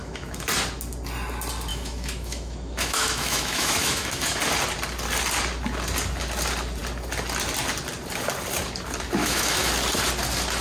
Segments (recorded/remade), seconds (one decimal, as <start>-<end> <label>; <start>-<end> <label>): 0.0-0.5 remade; 0.5-1.7 recorded; 1.7-4.4 remade; 4.4-9.2 recorded; 9.2-9.7 remade; 9.7-10.6 recorded